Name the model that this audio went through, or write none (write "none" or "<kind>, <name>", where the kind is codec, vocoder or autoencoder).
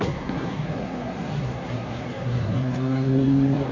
codec, SNAC